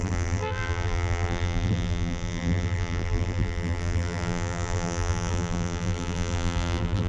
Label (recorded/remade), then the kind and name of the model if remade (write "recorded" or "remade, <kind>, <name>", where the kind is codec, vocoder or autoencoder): remade, vocoder, BigVGAN v2